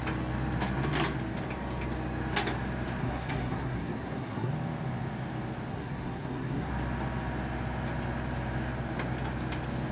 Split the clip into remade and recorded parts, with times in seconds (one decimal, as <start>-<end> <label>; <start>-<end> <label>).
0.0-3.0 recorded; 3.0-4.5 remade; 4.5-5.7 recorded; 5.7-6.7 remade; 6.7-9.9 recorded